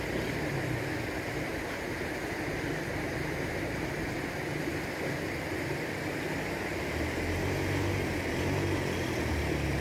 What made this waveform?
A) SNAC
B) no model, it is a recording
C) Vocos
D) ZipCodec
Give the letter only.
B